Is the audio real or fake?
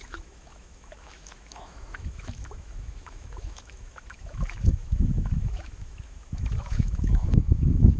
fake